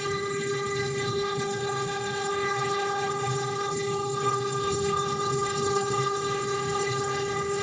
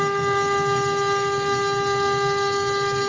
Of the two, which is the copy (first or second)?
first